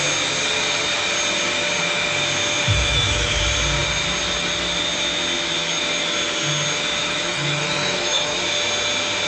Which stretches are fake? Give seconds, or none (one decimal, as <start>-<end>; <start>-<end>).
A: 2.7-3.4; 7.0-8.3